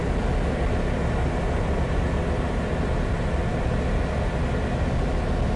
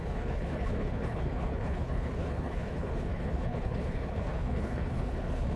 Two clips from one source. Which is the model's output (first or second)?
second